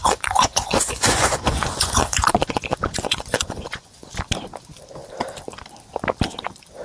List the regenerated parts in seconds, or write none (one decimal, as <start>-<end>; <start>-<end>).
0.0-4.1